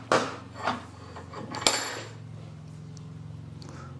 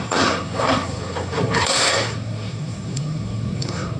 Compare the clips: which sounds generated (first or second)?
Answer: second